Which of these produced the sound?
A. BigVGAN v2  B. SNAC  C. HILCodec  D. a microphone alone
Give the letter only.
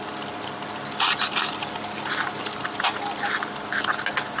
D